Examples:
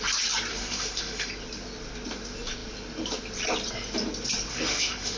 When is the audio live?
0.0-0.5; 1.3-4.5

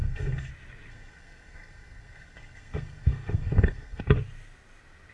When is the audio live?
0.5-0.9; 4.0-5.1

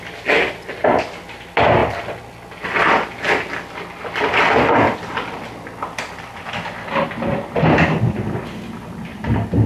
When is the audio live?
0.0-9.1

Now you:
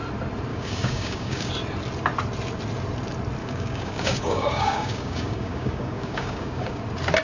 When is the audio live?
0.0-0.5; 1.5-3.4; 6.8-7.2

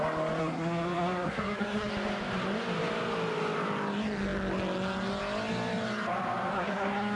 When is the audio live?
0.0-0.4; 1.9-6.5

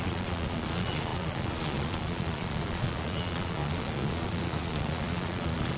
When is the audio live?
none